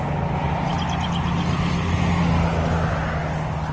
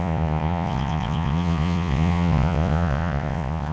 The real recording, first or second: first